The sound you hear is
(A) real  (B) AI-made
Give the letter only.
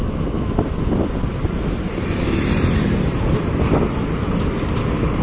A